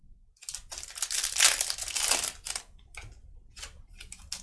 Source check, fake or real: real